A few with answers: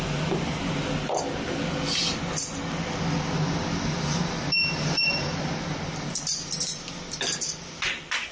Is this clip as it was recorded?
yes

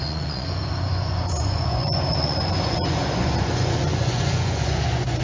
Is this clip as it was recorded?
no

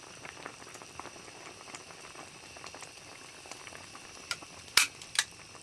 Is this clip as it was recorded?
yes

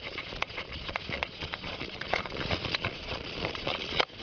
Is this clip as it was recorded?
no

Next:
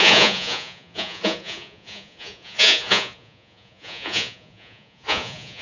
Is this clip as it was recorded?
no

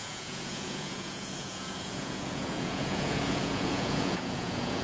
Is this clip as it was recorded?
no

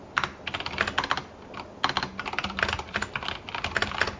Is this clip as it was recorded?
yes